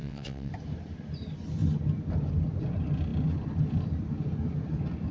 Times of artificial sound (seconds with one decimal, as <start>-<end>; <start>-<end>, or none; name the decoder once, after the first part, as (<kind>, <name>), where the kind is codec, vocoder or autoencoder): 0.0-0.5 (vocoder, WaveNeXt)